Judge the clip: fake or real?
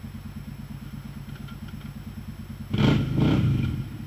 real